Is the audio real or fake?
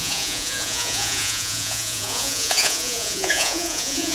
fake